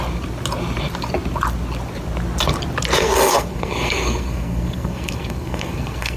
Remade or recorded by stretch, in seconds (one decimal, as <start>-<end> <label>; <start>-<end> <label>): 0.0-3.0 recorded; 3.0-6.2 remade